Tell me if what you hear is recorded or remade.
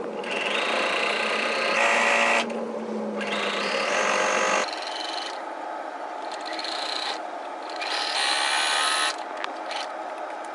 recorded